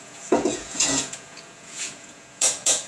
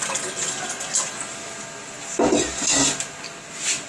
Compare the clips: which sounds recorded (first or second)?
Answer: second